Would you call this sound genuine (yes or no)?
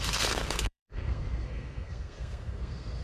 no